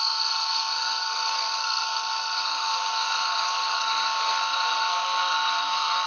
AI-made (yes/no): yes